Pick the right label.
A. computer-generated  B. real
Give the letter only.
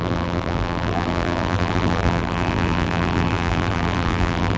A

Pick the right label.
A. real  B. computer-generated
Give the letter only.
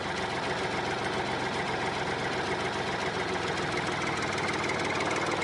A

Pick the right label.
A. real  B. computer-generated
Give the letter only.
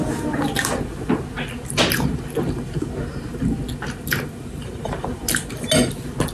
A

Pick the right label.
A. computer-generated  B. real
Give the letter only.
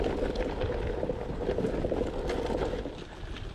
B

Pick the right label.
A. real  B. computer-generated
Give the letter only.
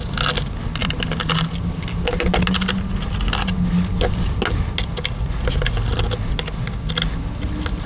A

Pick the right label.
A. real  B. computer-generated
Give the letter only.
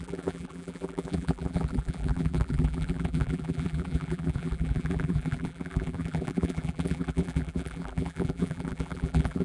B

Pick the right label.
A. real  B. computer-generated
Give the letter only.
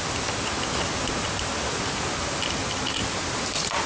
A